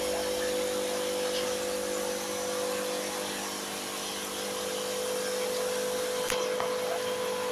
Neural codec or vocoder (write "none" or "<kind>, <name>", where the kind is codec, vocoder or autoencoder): none